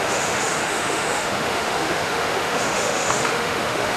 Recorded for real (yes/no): no